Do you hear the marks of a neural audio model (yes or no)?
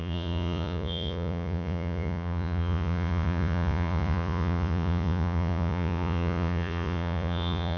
yes